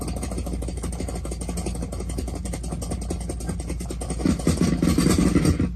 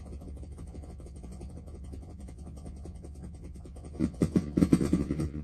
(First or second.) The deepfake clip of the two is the second